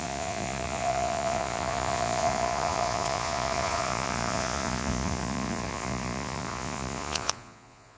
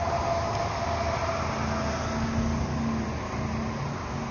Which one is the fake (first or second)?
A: first